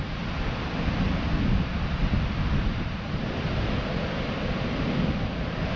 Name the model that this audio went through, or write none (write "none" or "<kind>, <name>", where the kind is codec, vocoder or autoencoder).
none